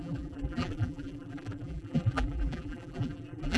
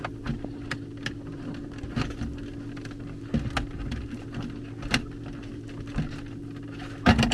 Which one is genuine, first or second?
second